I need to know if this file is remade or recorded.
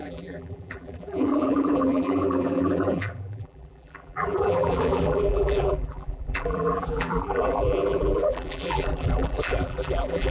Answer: remade